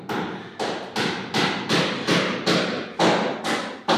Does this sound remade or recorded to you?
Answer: recorded